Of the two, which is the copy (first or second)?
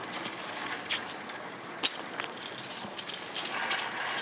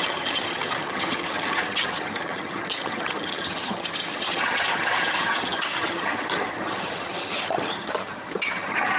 second